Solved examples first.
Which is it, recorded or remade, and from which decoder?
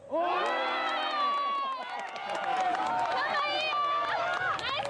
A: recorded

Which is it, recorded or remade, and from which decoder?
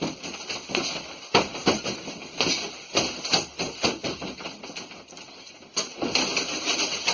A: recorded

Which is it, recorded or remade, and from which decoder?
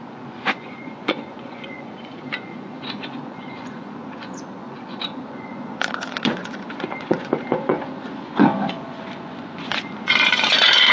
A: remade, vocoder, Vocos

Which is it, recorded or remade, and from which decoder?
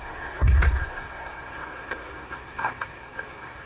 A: remade, codec, SNAC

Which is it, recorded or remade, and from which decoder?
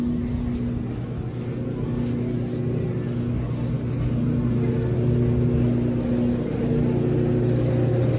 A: recorded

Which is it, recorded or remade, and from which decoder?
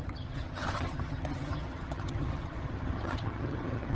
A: remade, vocoder, HiFi-GAN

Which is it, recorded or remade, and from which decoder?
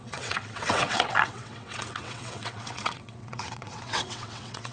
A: remade, vocoder, WaveNeXt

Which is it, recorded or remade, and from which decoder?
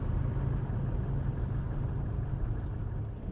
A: recorded